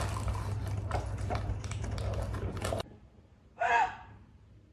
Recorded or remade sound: recorded